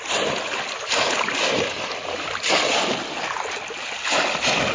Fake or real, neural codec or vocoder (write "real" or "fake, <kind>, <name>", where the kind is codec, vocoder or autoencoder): real